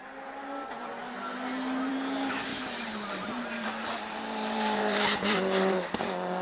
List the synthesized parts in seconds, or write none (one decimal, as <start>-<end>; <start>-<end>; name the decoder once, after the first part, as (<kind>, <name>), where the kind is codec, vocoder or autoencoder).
2.5-6.0 (vocoder, BigVGAN v2)